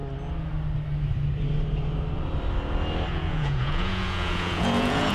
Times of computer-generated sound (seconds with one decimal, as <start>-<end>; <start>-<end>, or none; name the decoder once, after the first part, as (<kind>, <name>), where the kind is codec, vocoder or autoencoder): 3.1-5.1 (vocoder, Vocos)